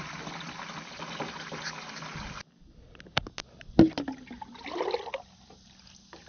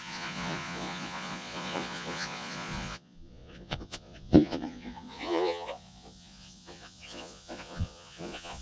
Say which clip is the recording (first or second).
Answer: first